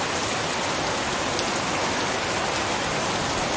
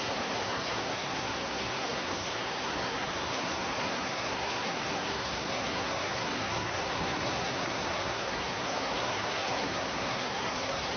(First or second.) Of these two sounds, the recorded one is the first